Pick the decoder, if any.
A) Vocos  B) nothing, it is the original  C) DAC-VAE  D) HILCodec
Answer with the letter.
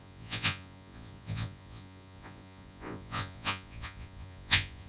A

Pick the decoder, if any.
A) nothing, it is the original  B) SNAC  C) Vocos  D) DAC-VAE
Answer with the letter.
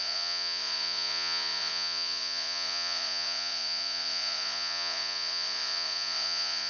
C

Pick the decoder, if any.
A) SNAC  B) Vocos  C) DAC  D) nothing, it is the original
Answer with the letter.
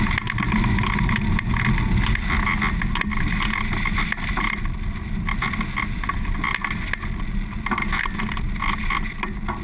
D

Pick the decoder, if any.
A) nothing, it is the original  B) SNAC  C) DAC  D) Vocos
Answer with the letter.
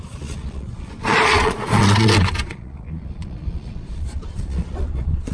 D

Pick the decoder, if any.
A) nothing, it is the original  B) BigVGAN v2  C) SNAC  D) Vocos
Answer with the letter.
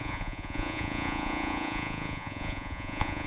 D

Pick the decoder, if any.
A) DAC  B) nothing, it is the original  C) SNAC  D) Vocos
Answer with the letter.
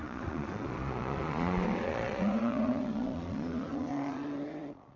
D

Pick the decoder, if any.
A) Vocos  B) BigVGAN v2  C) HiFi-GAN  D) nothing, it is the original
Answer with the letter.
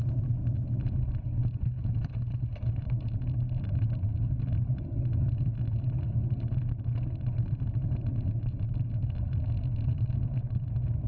D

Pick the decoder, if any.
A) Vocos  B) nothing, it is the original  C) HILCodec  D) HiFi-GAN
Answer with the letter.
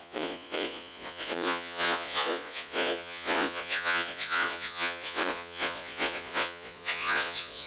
A